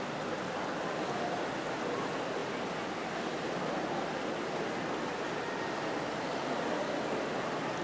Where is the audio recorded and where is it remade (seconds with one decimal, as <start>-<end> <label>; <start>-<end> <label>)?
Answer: 0.0-7.8 recorded